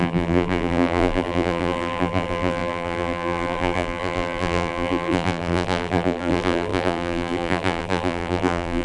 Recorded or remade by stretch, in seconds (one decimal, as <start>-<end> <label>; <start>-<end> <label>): 0.0-8.8 remade